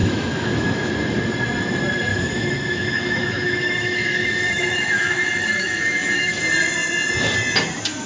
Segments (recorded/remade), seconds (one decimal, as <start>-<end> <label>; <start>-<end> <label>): 0.0-0.9 remade; 0.9-2.1 recorded; 2.1-6.4 remade; 6.4-8.1 recorded